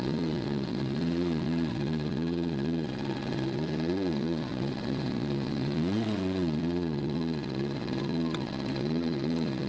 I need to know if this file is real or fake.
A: fake